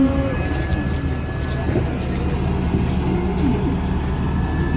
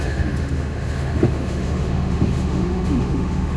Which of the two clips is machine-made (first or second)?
second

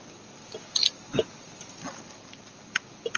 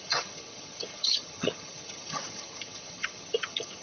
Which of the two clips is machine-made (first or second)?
second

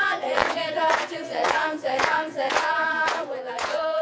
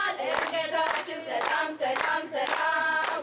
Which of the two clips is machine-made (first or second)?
first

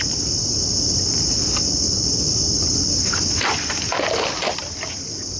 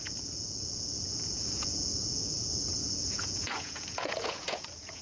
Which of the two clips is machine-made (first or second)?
second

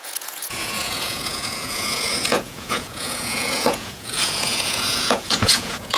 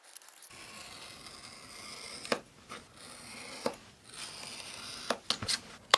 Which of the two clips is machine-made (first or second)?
first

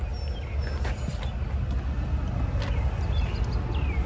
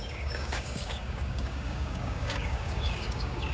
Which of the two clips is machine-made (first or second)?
second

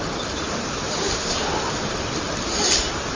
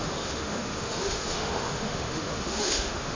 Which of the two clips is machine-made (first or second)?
second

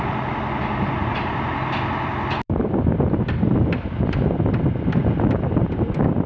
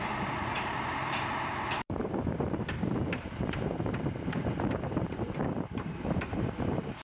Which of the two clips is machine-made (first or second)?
second